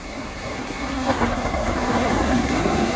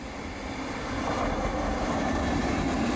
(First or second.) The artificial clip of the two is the first